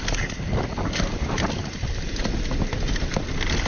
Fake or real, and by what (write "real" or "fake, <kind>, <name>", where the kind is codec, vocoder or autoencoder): real